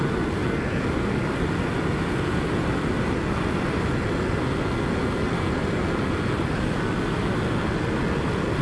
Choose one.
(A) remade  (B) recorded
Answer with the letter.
B